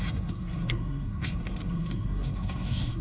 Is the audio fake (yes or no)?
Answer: yes